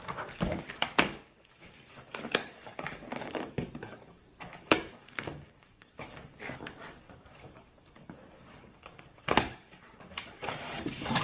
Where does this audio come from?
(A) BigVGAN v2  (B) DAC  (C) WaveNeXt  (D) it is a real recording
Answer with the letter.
B